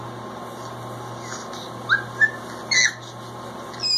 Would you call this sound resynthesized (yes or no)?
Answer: no